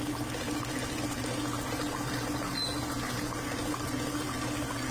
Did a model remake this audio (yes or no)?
no